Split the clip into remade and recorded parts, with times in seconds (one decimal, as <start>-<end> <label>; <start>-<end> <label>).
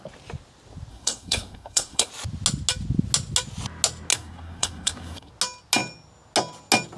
0.0-0.9 recorded; 0.9-2.1 remade; 2.1-4.1 recorded; 4.1-5.3 remade; 5.3-7.0 recorded